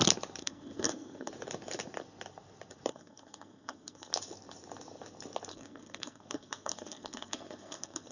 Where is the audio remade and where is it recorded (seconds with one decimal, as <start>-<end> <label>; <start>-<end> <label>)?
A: 0.0-0.4 recorded; 0.4-1.3 remade; 1.3-2.9 recorded; 2.9-4.1 remade; 4.1-5.5 recorded; 5.5-8.1 remade